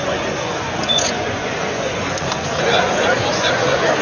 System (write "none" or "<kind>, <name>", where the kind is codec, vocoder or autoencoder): vocoder, Vocos